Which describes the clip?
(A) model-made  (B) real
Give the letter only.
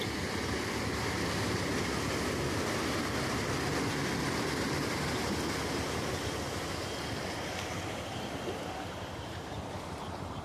B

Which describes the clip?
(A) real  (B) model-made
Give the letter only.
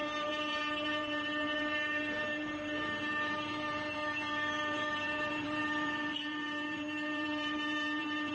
B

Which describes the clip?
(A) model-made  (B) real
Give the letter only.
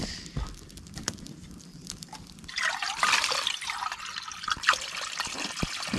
A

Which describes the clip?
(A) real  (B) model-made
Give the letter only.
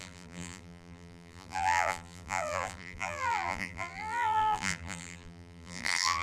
B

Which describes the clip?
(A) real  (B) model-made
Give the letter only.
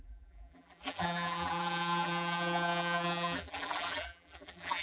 B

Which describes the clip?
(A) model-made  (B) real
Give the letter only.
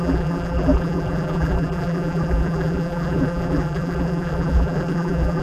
A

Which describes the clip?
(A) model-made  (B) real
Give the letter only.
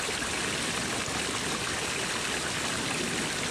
B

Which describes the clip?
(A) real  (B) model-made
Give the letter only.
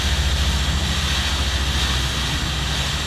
A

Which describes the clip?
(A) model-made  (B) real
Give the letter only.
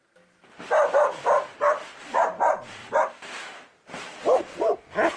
A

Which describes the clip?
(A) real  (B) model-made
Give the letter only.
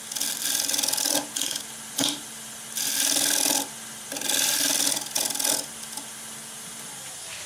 A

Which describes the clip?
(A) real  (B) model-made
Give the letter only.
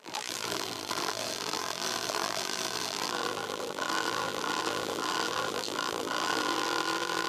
B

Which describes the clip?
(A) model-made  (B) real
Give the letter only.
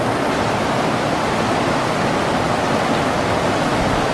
B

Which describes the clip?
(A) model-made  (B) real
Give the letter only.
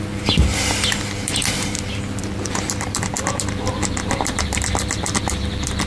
A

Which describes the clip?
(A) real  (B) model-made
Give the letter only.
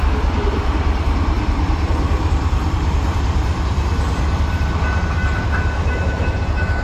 B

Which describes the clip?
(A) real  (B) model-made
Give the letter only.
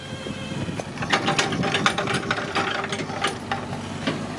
A